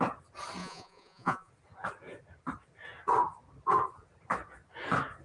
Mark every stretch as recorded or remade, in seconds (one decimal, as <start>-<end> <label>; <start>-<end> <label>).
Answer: 0.0-0.6 recorded; 0.6-1.5 remade; 1.5-5.2 recorded